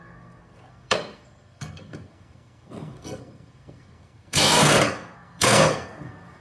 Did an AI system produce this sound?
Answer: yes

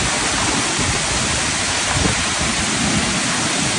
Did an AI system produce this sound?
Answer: no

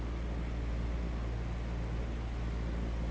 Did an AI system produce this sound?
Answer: no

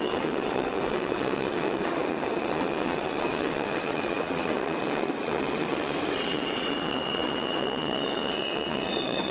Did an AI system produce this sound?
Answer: yes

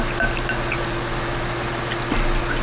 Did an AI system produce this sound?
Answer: no